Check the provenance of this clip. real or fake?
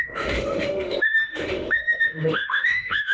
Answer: fake